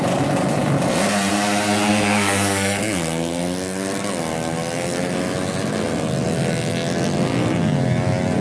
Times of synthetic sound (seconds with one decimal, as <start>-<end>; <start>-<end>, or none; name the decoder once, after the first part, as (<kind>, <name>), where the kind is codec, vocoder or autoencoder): 1.9-2.8 (codec, SNAC)

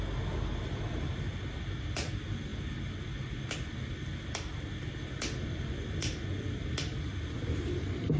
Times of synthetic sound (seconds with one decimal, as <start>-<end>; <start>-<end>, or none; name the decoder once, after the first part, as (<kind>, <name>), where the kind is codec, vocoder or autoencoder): none

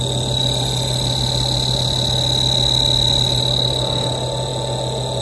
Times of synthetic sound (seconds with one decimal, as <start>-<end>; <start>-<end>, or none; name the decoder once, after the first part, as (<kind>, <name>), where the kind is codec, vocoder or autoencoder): none

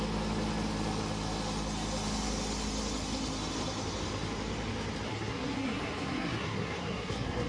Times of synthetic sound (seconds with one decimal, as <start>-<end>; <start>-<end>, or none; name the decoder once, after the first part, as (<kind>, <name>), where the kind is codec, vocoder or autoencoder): 5.1-7.5 (codec, SNAC)